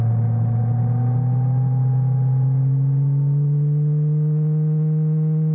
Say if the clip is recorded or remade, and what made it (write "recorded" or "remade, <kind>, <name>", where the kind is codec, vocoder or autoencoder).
recorded